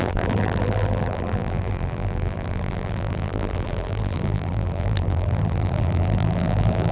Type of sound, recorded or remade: remade